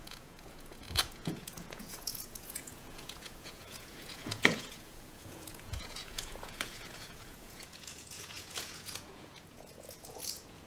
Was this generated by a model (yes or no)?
yes